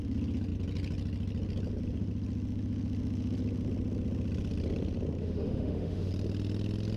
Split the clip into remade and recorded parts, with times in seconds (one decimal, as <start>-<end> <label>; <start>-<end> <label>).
0.0-5.2 recorded; 5.2-6.1 remade; 6.1-7.0 recorded